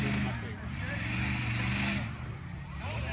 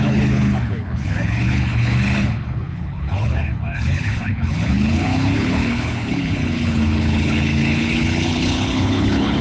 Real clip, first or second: first